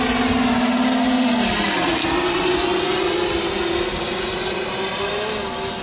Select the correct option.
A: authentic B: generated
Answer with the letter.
A